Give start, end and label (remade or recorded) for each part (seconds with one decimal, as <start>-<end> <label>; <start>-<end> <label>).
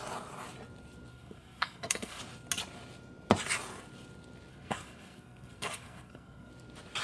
0.0-1.1 recorded; 1.1-2.2 remade; 2.2-4.5 recorded; 4.5-6.5 remade; 6.5-7.0 recorded